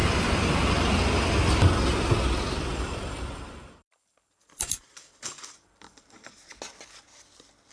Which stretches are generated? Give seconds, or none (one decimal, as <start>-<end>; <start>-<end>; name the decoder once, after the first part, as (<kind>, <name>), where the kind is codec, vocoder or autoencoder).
2.7-6.3 (vocoder, BigVGAN v2)